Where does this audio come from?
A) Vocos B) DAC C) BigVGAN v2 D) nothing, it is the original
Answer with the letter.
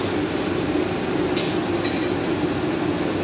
D